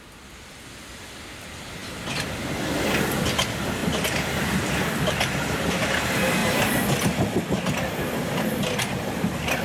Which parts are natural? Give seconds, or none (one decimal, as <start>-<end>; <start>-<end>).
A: 0.0-9.6